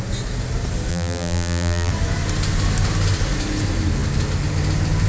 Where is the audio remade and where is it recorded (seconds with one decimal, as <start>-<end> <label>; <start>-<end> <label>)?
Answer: 0.0-0.9 recorded; 0.9-1.9 remade; 1.9-5.1 recorded